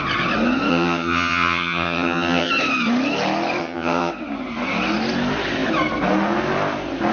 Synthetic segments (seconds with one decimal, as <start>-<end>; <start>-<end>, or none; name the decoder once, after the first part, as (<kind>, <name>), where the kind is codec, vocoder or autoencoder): 0.7-2.5 (vocoder, HiFi-GAN); 3.6-4.1